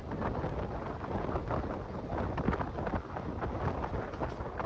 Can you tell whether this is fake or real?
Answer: real